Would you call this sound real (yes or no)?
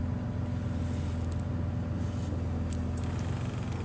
yes